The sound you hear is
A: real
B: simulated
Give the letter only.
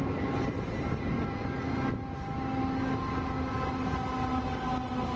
A